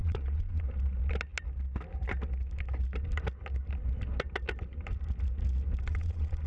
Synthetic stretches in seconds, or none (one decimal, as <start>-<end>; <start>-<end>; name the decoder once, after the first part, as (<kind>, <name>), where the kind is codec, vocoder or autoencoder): 0.0-0.7 (vocoder, Vocos); 5.9-6.5